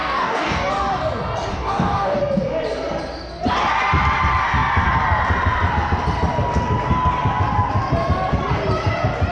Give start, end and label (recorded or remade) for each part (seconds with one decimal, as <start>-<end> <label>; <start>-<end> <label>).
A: 0.0-0.7 remade; 0.7-1.5 recorded; 1.5-2.2 remade; 2.2-9.3 recorded